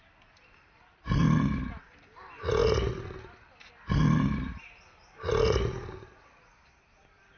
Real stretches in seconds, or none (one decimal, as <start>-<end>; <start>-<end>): none